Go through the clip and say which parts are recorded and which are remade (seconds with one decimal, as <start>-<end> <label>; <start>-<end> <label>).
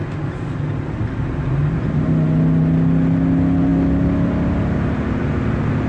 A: 0.0-5.9 recorded